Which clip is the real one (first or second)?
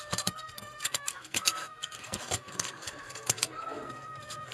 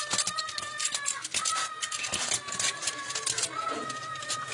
second